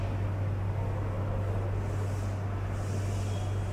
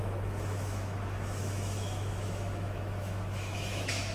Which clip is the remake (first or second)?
second